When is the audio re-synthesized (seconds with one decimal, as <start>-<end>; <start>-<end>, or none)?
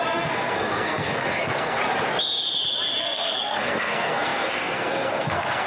0.0-1.8; 3.0-5.7